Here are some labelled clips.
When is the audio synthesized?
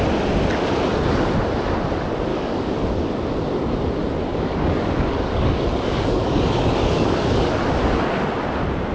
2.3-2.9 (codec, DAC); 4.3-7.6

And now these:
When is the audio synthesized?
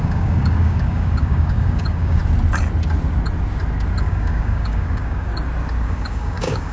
0.0-2.2 (codec, DAC); 4.0-5.3; 5.8-6.7